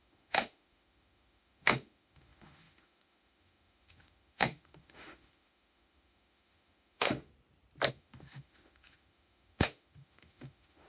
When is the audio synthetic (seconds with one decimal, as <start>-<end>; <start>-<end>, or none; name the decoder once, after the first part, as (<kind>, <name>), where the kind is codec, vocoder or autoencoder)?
0.0-7.3 (autoencoder, DAC-VAE); 7.9-10.9